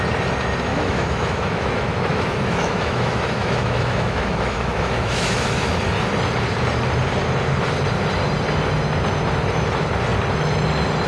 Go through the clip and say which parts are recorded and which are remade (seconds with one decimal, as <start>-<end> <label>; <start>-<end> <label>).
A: 0.0-0.7 recorded; 0.7-5.7 remade; 5.7-11.1 recorded